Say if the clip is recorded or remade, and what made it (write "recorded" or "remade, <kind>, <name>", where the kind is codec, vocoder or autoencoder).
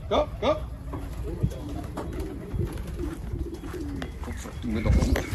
recorded